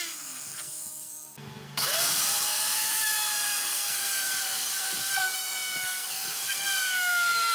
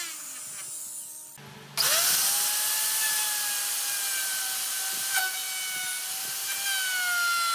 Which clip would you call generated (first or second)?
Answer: first